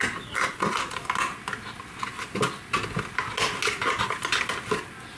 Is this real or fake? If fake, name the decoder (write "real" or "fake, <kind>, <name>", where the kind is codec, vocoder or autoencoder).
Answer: real